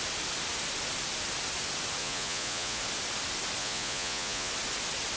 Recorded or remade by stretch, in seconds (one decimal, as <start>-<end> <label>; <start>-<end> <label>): 0.0-2.0 recorded; 2.0-2.8 remade; 2.8-3.6 recorded; 3.6-4.5 remade; 4.5-5.2 recorded